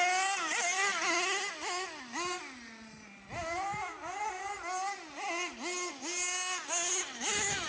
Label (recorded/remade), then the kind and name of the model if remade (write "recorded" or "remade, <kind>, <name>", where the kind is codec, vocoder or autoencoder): recorded